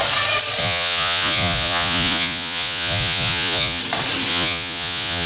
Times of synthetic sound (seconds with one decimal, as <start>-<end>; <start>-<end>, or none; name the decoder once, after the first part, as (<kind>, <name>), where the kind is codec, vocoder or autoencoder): 0.6-3.8 (vocoder, Vocos); 4.3-5.3